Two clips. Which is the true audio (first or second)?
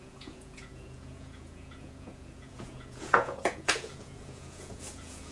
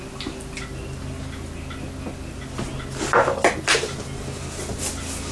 second